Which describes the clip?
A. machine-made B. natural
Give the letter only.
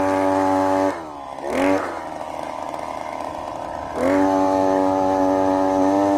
B